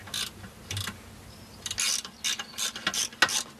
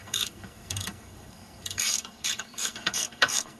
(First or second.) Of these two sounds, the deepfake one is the second